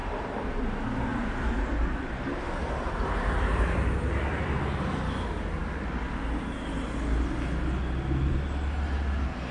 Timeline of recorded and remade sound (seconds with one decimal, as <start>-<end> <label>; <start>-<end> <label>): 0.0-0.6 remade; 0.6-1.1 recorded; 1.1-4.5 remade; 4.5-9.5 recorded

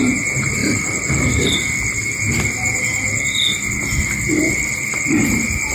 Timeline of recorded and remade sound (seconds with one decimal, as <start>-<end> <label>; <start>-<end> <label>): 0.0-5.7 recorded

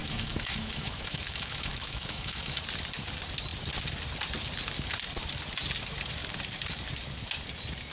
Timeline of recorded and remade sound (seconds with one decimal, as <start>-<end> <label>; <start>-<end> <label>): 0.0-2.6 remade; 2.6-7.9 recorded

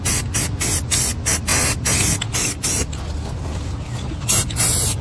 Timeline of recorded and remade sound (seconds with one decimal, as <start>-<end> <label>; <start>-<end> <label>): 0.0-5.0 recorded

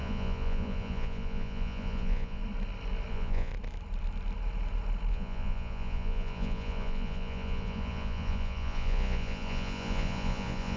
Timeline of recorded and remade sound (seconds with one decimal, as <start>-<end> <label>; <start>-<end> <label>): 0.0-2.4 remade; 2.4-3.1 recorded; 3.1-3.5 remade; 3.5-5.1 recorded; 5.1-10.8 remade

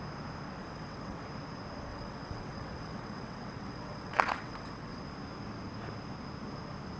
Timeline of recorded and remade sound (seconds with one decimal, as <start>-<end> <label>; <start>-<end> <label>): 0.0-0.6 recorded; 0.6-1.2 remade; 1.2-1.9 recorded; 1.9-5.0 remade; 5.0-7.0 recorded

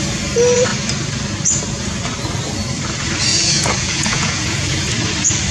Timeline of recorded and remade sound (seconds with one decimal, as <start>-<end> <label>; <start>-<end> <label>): 0.0-3.3 recorded; 3.3-4.8 remade; 4.8-5.5 recorded

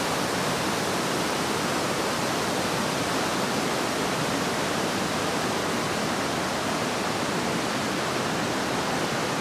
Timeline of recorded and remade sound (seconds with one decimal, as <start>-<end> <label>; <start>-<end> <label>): 0.0-9.4 recorded